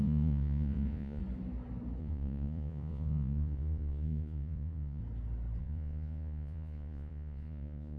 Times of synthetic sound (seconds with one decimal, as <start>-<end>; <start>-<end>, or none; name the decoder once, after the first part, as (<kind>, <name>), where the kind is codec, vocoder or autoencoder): 0.0-1.2 (vocoder, Vocos); 2.0-5.0; 5.6-8.0